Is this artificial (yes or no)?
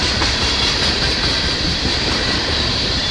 yes